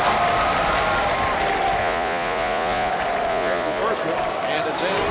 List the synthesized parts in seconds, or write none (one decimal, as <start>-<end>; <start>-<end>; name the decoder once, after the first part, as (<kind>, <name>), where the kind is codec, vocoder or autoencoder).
1.8-2.9 (vocoder, Vocos); 3.3-3.8